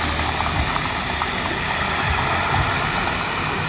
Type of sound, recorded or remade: recorded